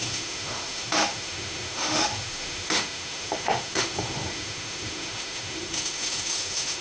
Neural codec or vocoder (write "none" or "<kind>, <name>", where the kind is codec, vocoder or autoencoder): autoencoder, DAC-VAE